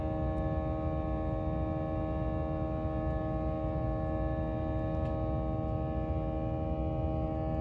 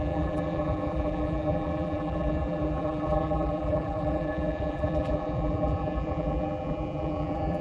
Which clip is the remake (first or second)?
second